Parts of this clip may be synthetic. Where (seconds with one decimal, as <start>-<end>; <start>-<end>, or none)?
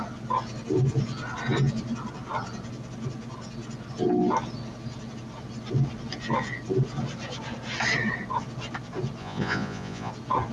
9.2-10.1